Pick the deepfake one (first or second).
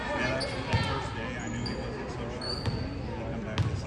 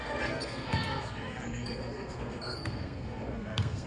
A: second